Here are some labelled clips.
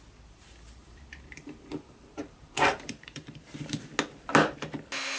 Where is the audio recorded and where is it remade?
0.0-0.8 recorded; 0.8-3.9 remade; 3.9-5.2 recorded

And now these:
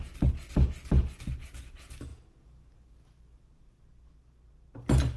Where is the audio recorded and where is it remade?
0.0-5.2 recorded

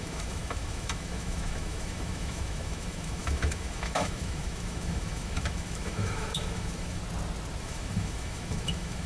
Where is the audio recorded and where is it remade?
0.0-7.0 remade; 7.0-7.6 recorded; 7.6-9.1 remade

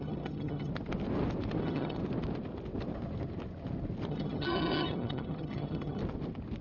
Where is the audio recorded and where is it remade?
0.0-0.7 remade; 0.7-1.6 recorded; 1.6-2.0 remade; 2.0-4.1 recorded; 4.1-6.0 remade; 6.0-6.6 recorded

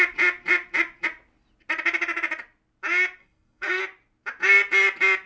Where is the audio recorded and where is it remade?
0.0-3.2 recorded; 3.2-3.8 remade; 3.8-5.3 recorded